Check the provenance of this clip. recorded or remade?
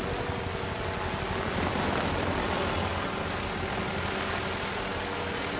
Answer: recorded